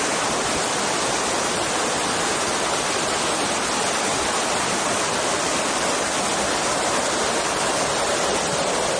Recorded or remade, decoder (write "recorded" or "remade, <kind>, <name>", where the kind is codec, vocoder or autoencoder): recorded